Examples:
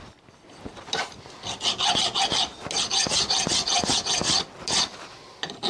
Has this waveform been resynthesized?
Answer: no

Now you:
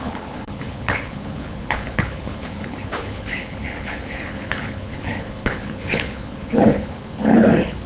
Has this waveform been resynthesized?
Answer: yes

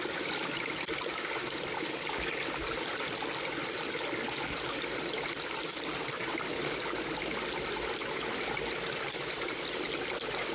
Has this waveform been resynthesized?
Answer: no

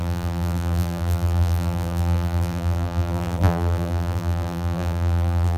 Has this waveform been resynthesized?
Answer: yes